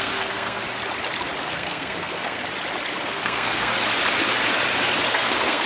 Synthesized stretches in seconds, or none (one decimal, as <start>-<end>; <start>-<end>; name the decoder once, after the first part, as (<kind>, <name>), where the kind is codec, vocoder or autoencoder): 0.0-0.6 (codec, SNAC); 1.4-2.4; 3.0-3.7; 5.1-5.7